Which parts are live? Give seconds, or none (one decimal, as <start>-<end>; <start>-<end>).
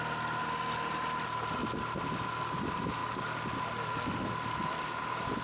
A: 0.0-5.4